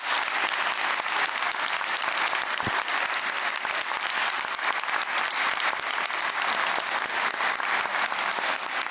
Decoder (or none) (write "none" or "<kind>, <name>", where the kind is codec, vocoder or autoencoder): vocoder, BigVGAN v2